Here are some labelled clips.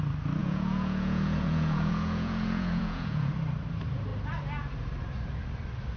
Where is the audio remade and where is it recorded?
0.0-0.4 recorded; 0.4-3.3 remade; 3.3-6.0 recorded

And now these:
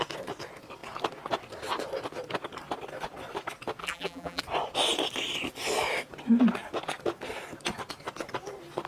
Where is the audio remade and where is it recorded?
0.0-3.8 recorded; 3.8-4.4 remade; 4.4-8.9 recorded

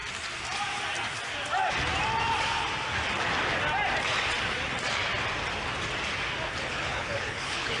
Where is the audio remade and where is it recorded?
0.0-6.5 recorded; 6.5-7.8 remade

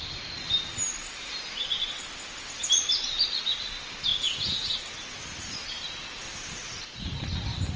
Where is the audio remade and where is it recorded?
0.0-4.1 recorded; 4.1-4.9 remade; 4.9-7.8 recorded

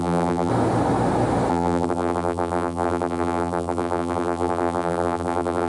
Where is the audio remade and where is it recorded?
0.0-0.5 remade; 0.5-1.5 recorded; 1.5-5.7 remade

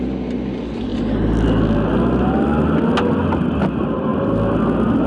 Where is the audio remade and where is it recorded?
0.0-5.1 recorded

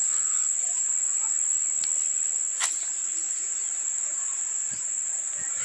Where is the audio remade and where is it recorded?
0.0-5.6 recorded

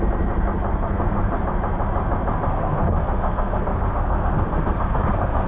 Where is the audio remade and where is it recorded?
0.0-0.7 recorded; 0.7-1.4 remade; 1.4-2.5 recorded; 2.5-5.5 remade